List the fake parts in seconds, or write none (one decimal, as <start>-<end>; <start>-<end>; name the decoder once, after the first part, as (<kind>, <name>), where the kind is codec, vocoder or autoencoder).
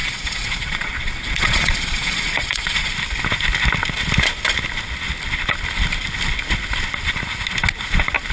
0.0-2.9 (vocoder, Vocos)